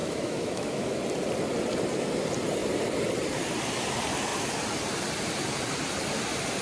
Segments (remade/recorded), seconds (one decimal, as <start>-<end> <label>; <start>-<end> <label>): 0.0-1.0 remade; 1.0-6.6 recorded